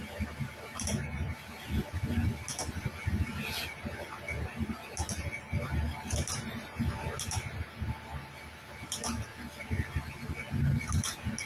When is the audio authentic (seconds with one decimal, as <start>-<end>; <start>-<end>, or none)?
0.0-11.5